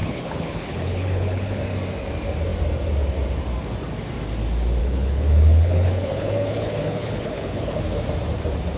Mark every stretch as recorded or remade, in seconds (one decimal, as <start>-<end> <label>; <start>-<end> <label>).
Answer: 0.0-1.6 remade; 1.6-4.8 recorded; 4.8-7.8 remade; 7.8-8.8 recorded